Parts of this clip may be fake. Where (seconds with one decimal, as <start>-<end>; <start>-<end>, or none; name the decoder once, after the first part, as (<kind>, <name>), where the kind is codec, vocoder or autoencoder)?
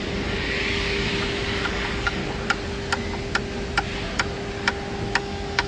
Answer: 0.0-1.1 (codec, DAC); 1.6-2.2; 5.2-5.7